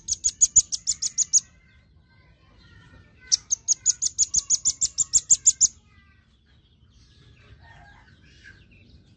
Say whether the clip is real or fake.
real